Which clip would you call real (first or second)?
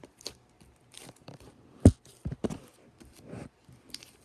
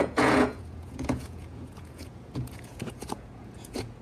first